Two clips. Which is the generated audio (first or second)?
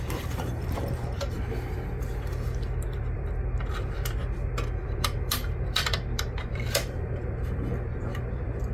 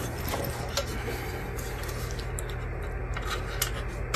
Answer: first